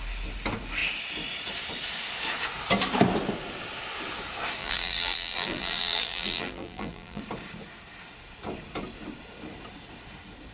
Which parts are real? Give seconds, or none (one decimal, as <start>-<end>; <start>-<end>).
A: 0.0-4.6; 7.2-10.5